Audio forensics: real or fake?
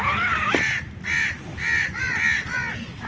real